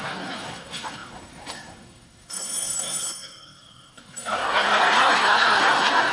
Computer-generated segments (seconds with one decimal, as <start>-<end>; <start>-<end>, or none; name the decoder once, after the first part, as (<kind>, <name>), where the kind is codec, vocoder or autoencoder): 0.0-6.1 (codec, SNAC)